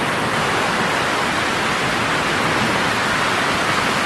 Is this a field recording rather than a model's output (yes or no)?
yes